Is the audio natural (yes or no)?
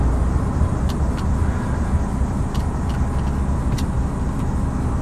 yes